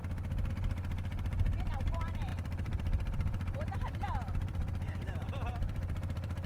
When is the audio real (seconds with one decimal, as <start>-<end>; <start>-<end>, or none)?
0.0-2.3